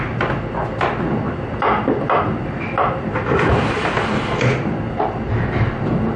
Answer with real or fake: real